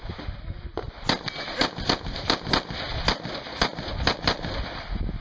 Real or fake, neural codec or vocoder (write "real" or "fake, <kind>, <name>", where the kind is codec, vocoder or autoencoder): real